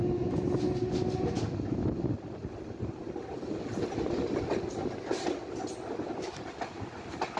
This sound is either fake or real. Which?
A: real